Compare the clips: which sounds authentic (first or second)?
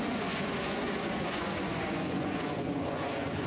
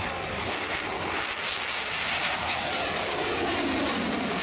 second